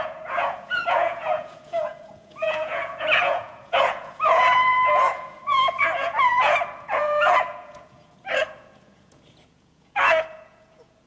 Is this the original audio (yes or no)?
no